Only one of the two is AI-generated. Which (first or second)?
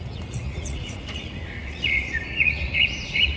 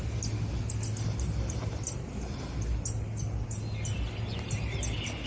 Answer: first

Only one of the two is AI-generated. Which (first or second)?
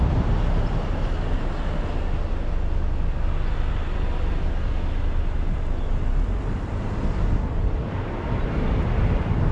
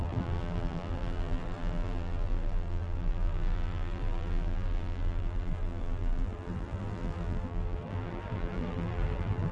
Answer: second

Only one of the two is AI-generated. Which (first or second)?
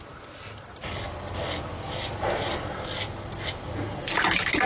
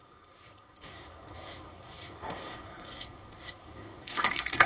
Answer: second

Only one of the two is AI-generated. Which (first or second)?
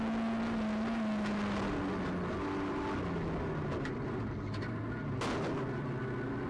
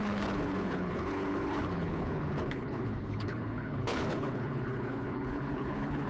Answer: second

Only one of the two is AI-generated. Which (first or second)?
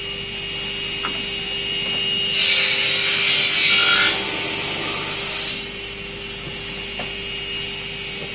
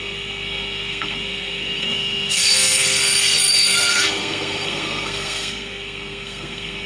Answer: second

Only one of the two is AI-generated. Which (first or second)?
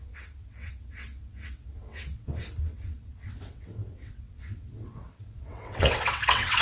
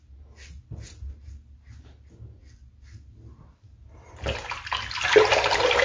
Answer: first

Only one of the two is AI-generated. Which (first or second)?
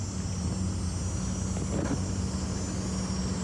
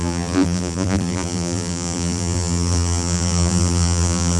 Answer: second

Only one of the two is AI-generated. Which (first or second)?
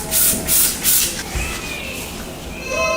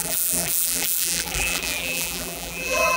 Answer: second